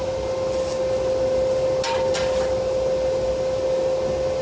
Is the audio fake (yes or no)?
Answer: no